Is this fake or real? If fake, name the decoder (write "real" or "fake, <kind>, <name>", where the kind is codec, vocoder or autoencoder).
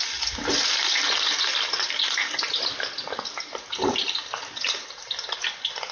real